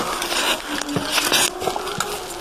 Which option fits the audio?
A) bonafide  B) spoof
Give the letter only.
A